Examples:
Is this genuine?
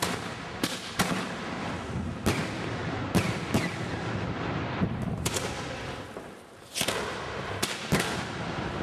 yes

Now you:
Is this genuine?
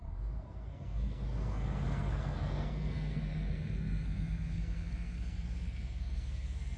no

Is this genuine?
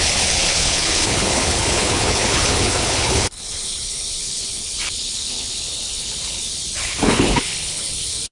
no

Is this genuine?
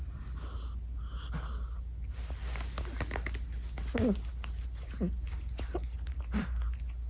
yes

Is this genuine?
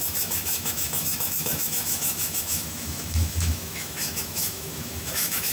no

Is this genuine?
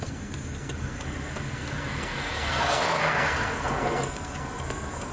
no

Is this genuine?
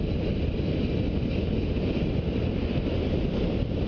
yes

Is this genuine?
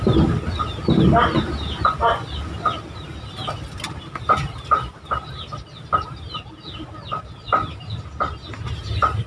yes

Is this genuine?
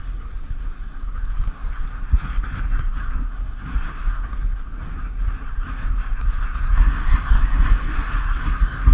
no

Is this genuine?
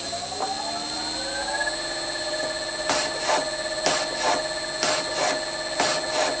yes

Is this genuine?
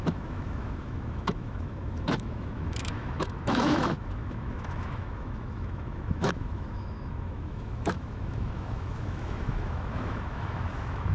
no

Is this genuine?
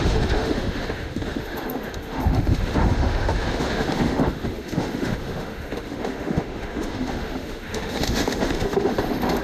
no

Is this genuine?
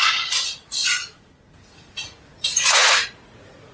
no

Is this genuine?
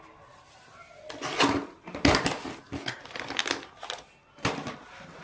yes